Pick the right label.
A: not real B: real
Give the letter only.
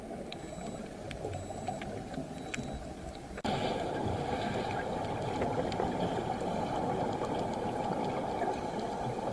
B